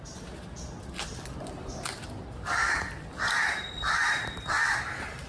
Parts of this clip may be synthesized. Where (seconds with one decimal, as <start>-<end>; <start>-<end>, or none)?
none